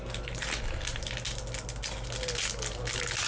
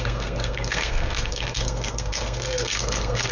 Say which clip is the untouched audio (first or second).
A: first